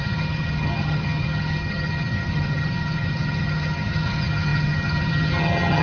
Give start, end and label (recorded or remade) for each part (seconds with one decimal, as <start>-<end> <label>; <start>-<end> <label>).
0.0-5.8 remade